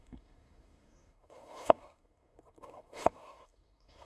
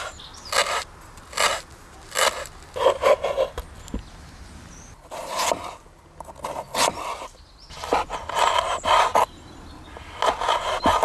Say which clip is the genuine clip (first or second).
second